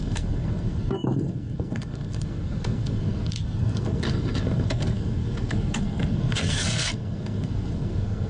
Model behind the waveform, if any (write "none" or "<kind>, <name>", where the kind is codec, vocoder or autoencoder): codec, SNAC